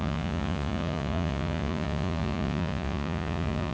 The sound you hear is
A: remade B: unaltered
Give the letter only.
A